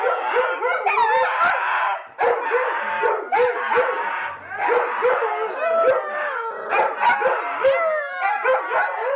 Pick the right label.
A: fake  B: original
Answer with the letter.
B